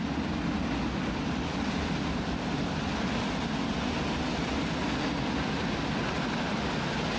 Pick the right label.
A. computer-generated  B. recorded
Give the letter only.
B